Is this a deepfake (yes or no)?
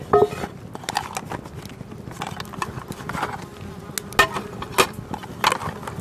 no